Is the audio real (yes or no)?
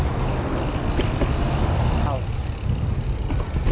yes